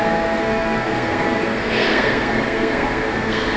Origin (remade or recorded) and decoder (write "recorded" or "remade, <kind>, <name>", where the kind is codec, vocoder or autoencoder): remade, codec, SNAC